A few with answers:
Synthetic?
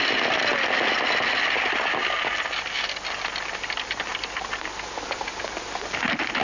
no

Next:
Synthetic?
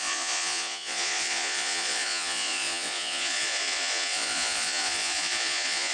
yes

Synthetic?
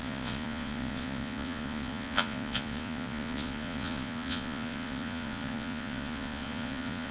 yes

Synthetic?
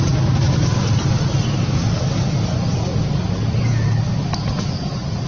no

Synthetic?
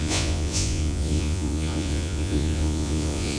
yes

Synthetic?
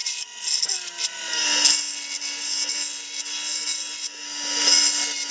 no